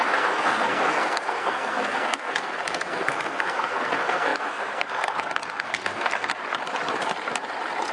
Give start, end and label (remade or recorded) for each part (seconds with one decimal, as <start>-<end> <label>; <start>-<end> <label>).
0.0-6.3 remade; 6.3-7.9 recorded